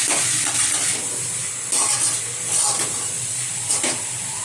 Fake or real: real